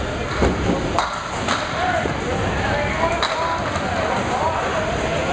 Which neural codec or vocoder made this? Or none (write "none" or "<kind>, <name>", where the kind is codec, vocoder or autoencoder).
none